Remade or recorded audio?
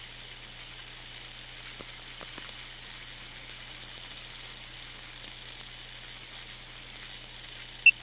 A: recorded